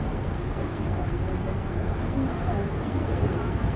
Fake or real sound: fake